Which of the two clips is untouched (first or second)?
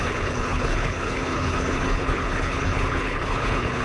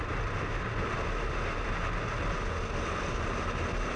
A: second